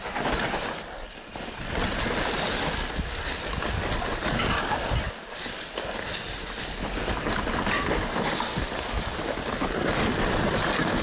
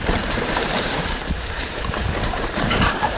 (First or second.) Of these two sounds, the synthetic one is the second